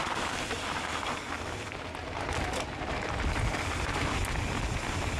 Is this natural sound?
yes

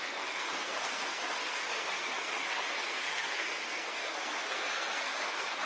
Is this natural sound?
no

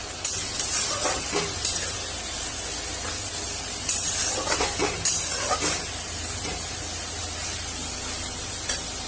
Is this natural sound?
yes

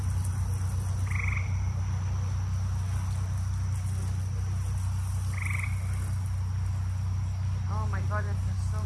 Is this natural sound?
yes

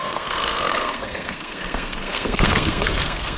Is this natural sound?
no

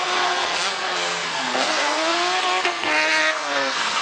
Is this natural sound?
no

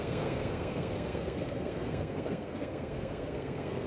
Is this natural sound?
no